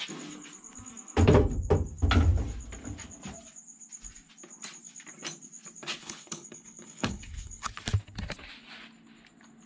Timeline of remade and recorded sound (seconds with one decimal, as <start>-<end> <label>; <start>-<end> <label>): 0.0-6.0 recorded; 6.0-7.7 remade; 7.7-9.7 recorded